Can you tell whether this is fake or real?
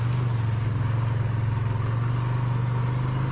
real